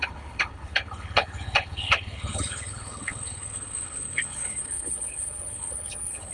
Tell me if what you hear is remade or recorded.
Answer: remade